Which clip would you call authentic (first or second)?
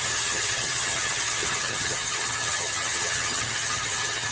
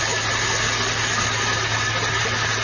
second